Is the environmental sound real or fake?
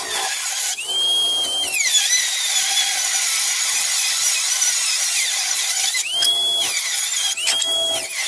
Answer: real